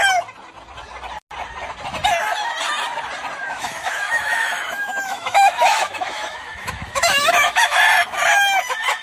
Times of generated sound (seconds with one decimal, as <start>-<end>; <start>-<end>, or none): 3.4-7.8